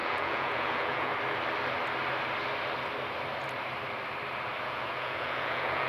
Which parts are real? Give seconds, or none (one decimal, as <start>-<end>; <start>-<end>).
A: 1.1-4.6